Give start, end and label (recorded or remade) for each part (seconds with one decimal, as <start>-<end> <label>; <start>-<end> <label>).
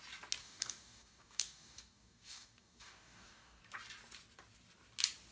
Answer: 0.0-0.4 recorded; 0.4-3.6 remade; 3.6-5.3 recorded